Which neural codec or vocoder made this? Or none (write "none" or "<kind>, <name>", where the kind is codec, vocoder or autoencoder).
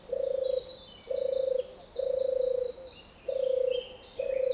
none